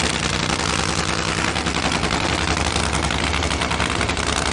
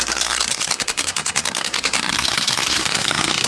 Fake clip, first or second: second